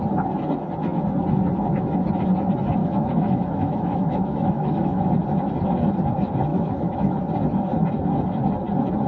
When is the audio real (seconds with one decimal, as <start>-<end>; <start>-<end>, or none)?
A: 0.0-2.8; 5.1-6.5; 7.2-9.1